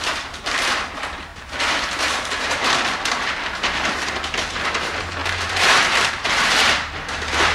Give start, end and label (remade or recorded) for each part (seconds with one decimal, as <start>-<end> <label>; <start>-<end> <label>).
0.0-7.5 remade